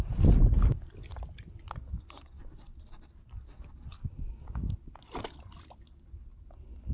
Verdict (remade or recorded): recorded